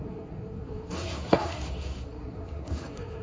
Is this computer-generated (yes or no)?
yes